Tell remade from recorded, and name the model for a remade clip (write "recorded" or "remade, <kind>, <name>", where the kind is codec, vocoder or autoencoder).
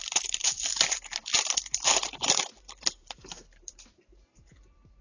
remade, vocoder, BigVGAN v2